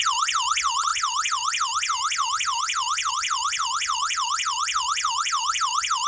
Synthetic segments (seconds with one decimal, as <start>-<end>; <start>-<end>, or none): 0.0-6.1